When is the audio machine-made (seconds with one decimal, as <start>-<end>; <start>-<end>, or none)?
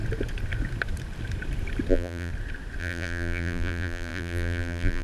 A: 1.9-2.3; 2.8-5.0